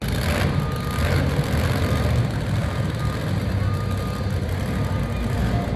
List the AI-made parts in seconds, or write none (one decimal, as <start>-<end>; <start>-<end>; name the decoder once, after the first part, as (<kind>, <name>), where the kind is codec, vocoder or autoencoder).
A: none